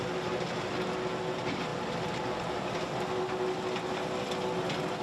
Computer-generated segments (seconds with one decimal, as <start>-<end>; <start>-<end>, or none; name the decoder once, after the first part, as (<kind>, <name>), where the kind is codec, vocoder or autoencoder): none